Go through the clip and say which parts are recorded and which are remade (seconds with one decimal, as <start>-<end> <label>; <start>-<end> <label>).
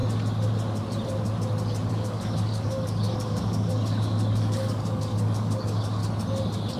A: 0.0-1.9 recorded; 1.9-6.0 remade; 6.0-6.8 recorded